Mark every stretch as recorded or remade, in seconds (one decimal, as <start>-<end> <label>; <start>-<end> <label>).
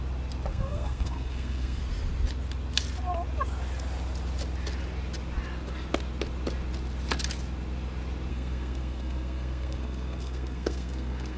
0.0-0.5 recorded; 0.5-1.8 remade; 1.8-8.3 recorded; 8.3-11.4 remade